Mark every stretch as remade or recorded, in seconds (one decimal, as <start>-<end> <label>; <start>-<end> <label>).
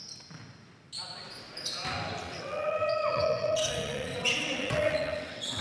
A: 0.0-2.2 recorded; 2.2-5.6 remade